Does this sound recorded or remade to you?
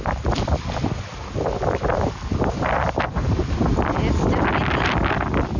recorded